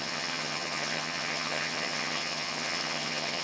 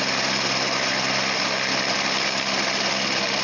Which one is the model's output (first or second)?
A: first